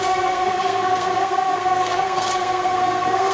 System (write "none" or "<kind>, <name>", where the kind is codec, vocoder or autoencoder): codec, SNAC